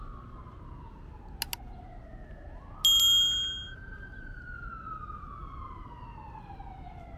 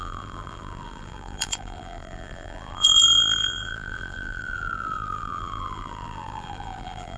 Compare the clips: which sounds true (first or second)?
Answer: first